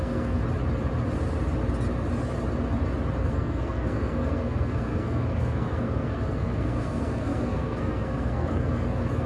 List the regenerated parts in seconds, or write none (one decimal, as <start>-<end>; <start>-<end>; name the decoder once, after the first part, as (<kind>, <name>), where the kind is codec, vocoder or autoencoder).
0.0-0.4 (codec, SNAC); 3.2-9.3